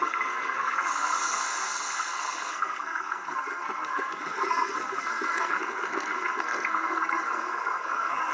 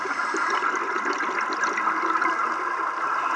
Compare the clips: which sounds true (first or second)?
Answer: second